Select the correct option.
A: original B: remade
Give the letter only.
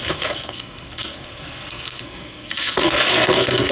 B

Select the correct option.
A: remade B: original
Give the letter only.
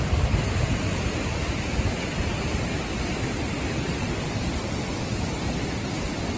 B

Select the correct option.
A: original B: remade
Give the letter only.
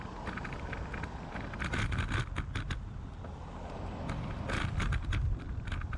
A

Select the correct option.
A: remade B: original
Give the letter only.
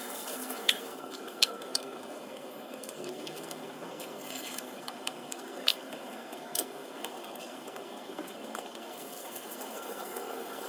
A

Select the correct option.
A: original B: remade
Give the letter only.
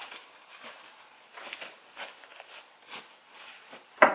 A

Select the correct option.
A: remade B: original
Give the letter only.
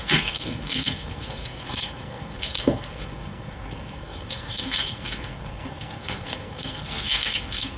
A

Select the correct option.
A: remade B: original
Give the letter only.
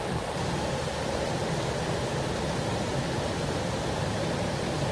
B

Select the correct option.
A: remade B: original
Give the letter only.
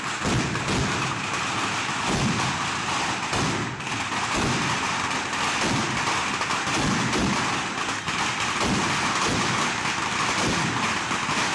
B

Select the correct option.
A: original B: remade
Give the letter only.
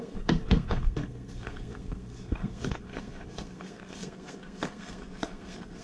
B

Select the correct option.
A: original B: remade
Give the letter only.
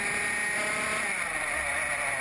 A